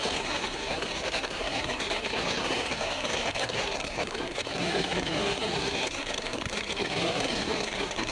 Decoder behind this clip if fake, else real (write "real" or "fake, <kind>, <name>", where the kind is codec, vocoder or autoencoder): fake, codec, SNAC